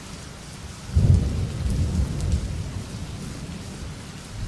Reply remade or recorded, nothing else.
recorded